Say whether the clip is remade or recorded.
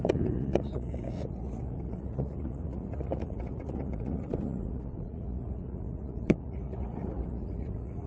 remade